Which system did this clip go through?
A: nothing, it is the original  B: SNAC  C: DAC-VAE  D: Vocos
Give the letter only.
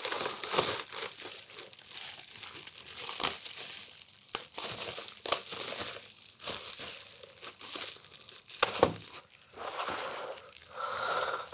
A